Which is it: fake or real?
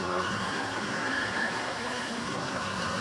fake